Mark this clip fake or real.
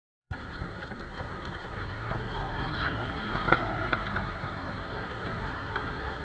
fake